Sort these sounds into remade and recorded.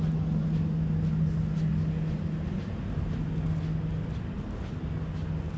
recorded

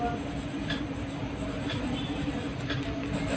recorded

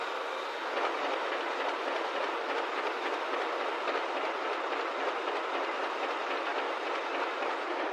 recorded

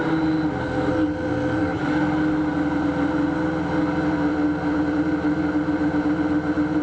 recorded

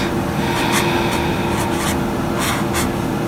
recorded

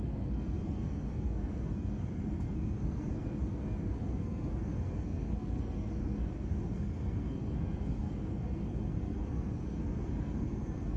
remade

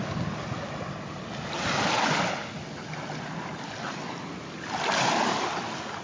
recorded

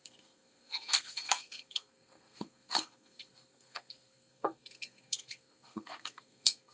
remade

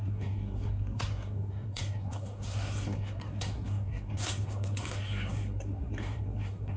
remade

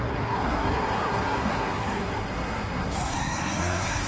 remade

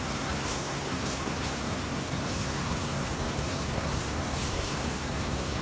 remade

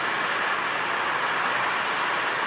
recorded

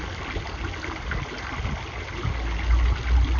recorded